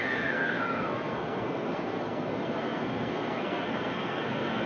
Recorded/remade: remade